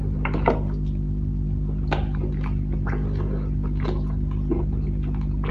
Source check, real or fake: real